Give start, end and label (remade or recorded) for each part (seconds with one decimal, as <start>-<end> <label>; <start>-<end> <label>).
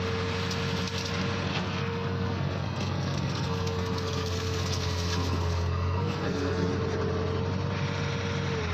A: 0.0-1.5 recorded; 1.5-6.7 remade; 6.7-8.7 recorded